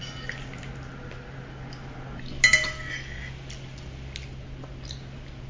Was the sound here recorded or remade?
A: recorded